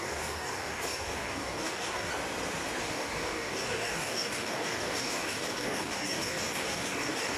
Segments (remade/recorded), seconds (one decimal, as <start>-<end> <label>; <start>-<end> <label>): 0.0-2.1 remade; 2.1-2.8 recorded; 2.8-7.4 remade